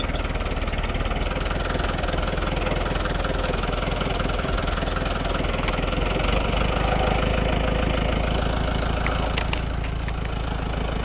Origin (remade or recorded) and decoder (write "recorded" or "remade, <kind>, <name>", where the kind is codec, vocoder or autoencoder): recorded